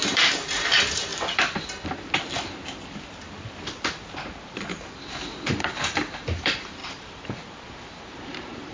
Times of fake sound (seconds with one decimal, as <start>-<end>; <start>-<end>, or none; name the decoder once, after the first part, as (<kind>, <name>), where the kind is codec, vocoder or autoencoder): 0.0-1.1 (vocoder, BigVGAN v2); 3.0-8.7